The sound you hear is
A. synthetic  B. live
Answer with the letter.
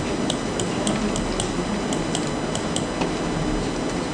B